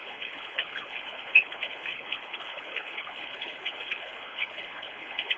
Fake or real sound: fake